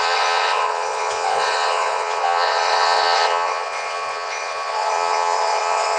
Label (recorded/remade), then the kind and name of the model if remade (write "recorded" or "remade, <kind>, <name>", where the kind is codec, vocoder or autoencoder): remade, vocoder, Vocos